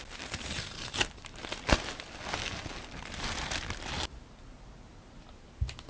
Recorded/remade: recorded